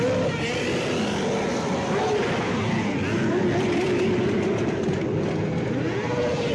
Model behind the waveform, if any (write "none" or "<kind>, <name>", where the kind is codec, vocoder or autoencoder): none